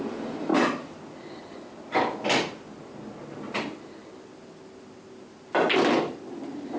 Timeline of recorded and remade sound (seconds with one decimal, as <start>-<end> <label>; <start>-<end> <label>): 0.0-6.8 recorded